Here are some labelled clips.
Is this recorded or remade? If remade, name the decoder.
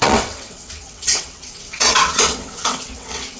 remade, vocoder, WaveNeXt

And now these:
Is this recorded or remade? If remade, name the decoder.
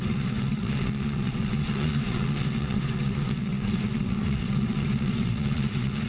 remade, vocoder, WaveNeXt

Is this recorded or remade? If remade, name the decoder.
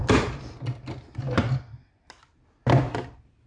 recorded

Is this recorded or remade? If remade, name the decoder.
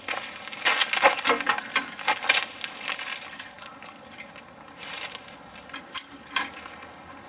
recorded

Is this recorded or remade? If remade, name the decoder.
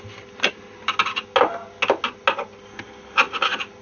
recorded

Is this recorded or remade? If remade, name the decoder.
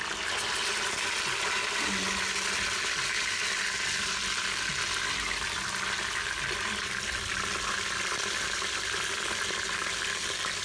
recorded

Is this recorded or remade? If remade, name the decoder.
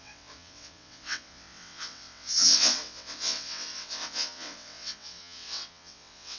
remade, vocoder, WaveNeXt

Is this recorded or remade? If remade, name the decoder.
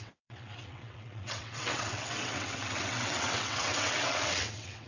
remade, vocoder, WaveNeXt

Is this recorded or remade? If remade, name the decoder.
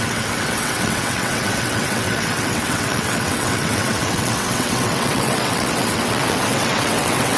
remade, vocoder, WaveNeXt